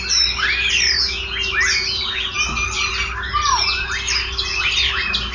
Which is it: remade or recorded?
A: recorded